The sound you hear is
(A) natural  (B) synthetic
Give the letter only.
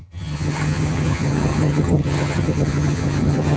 B